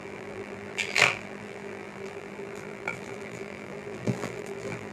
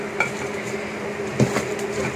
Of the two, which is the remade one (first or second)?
first